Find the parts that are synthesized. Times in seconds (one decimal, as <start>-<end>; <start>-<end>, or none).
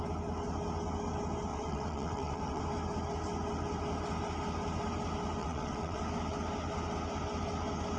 1.5-2.6; 5.4-6.0